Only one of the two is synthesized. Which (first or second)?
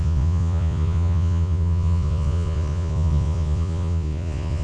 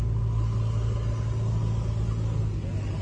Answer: first